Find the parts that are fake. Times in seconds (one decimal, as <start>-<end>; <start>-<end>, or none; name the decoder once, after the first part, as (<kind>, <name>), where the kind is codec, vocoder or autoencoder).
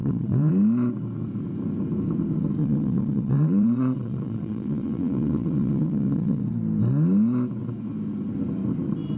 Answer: 0.0-0.5 (vocoder, WaveNeXt); 2.6-6.4